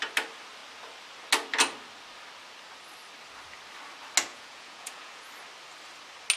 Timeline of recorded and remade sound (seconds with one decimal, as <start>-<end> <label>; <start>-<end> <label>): 0.0-4.3 recorded; 4.3-5.3 remade; 5.3-6.4 recorded